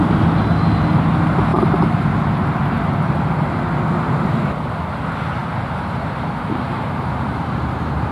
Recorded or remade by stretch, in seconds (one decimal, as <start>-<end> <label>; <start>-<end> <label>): 0.0-5.4 recorded; 5.4-8.1 remade